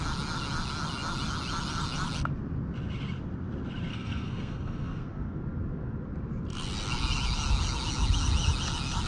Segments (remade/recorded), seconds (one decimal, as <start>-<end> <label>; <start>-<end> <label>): 0.0-3.9 recorded; 3.9-5.4 remade; 5.4-9.1 recorded